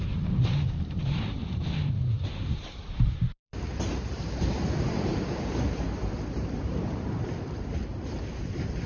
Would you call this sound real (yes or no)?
no